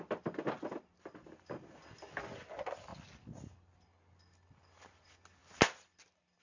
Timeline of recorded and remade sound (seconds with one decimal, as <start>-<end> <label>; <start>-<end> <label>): 0.0-6.4 recorded